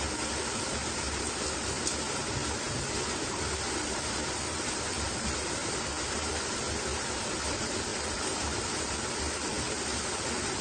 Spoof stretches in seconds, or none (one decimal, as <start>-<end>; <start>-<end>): none